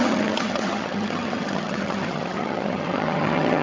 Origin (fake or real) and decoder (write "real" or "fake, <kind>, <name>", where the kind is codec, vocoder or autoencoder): fake, vocoder, HiFi-GAN